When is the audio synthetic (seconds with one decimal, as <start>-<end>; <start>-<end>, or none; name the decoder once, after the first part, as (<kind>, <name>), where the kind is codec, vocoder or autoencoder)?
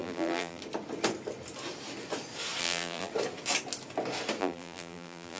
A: 0.0-0.6 (vocoder, BigVGAN v2); 2.6-3.1; 4.4-5.4